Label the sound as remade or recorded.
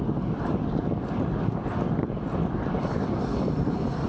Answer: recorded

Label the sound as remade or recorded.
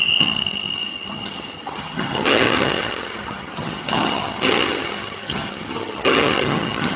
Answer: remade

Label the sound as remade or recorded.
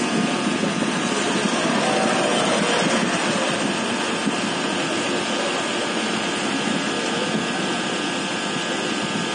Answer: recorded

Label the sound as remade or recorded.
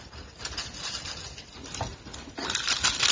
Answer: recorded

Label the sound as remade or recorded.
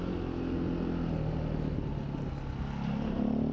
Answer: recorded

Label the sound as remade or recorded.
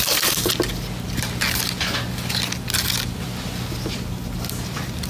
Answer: recorded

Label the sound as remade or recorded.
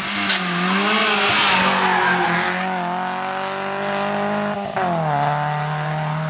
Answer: recorded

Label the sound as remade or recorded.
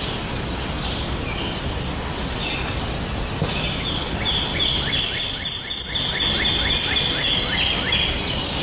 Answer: recorded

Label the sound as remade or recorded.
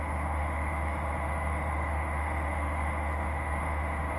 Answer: remade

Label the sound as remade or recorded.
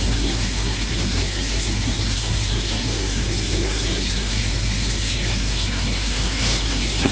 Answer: remade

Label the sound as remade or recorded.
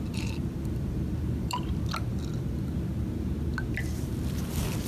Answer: recorded